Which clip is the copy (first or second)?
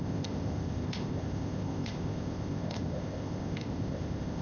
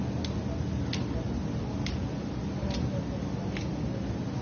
first